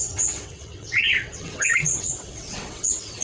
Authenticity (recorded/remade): remade